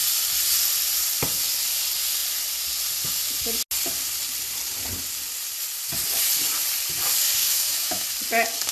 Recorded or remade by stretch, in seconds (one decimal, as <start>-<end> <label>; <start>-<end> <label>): 0.0-7.4 recorded; 7.4-8.0 remade; 8.0-8.7 recorded